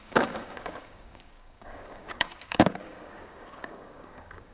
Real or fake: fake